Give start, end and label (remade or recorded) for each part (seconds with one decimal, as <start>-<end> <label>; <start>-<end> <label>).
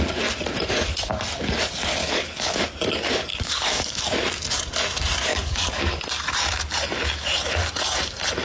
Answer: 0.0-2.0 recorded; 2.0-2.6 remade; 2.6-3.3 recorded; 3.3-4.0 remade; 4.0-5.3 recorded; 5.3-6.0 remade; 6.0-8.4 recorded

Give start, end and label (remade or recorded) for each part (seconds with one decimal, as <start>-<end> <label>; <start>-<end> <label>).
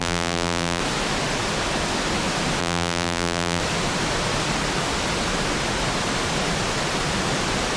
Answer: 0.0-0.8 remade; 0.8-2.6 recorded; 2.6-3.6 remade; 3.6-7.8 recorded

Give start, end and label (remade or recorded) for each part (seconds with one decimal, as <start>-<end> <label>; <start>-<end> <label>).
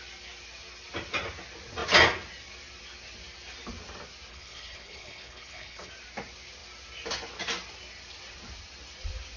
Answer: 0.0-4.3 recorded; 4.3-5.9 remade; 5.9-9.4 recorded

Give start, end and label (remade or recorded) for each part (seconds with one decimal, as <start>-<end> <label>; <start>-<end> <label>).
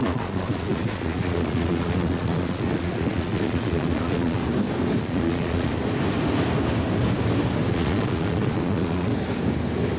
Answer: 0.0-4.4 remade; 4.4-5.0 recorded; 5.0-5.7 remade; 5.7-7.7 recorded; 7.7-9.1 remade; 9.1-10.0 recorded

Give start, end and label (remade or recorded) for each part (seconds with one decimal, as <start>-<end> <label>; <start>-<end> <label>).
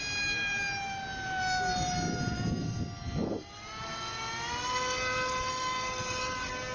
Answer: 0.0-6.7 recorded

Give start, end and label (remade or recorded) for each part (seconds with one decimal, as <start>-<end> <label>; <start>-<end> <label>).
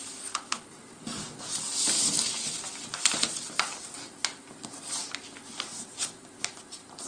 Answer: 0.0-7.1 recorded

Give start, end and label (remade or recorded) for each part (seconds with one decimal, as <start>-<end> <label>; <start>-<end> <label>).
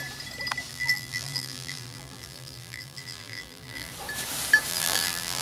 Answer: 0.0-0.7 recorded; 0.7-3.9 remade; 3.9-4.7 recorded; 4.7-5.4 remade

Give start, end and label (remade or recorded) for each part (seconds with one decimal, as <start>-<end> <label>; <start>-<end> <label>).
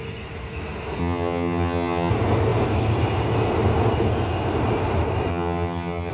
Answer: 0.0-1.0 recorded; 1.0-2.1 remade; 2.1-5.3 recorded; 5.3-6.1 remade